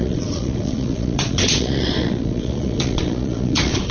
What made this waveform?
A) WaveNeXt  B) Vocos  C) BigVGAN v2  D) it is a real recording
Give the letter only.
B